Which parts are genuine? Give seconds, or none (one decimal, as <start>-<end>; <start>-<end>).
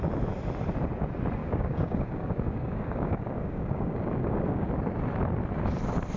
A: 0.0-1.4; 4.7-6.2